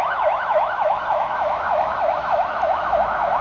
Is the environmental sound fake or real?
fake